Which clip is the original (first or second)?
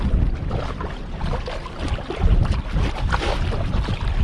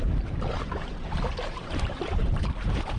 first